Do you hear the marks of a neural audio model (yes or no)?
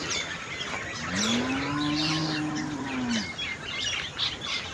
no